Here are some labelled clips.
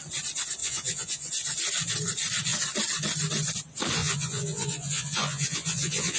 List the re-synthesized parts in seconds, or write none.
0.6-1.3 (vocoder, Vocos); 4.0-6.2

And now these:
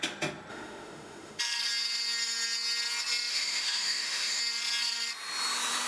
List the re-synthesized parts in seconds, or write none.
0.5-1.4 (autoencoder, DAC-VAE); 3.3-4.4

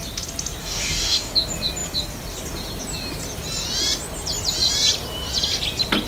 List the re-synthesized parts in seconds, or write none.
0.6-1.3 (codec, DAC)

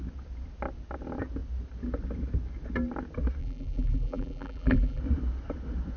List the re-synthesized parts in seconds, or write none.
3.4-5.0 (vocoder, BigVGAN v2)

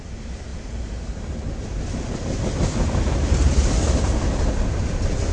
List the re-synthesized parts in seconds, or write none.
none

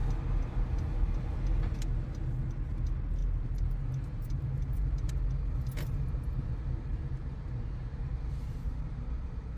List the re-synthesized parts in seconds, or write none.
3.2-5.1 (vocoder, BigVGAN v2); 6.9-8.8

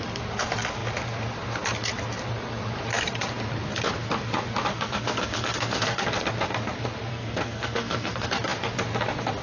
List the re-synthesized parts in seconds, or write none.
4.7-6.0 (codec, SNAC); 7.1-8.3